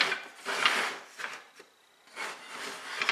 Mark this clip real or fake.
real